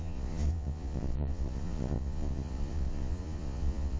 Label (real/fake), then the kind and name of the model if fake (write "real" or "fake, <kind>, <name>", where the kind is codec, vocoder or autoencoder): fake, vocoder, Vocos